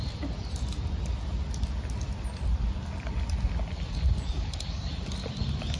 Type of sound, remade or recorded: recorded